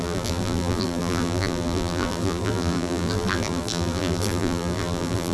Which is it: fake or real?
fake